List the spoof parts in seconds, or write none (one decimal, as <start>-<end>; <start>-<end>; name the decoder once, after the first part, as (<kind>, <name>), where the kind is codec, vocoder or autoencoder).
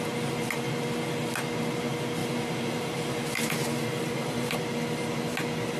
2.2-4.6 (vocoder, BigVGAN v2)